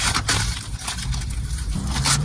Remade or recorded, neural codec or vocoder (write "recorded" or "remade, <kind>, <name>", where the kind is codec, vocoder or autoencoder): recorded